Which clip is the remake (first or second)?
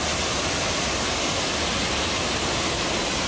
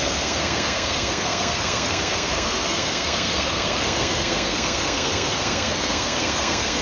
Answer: second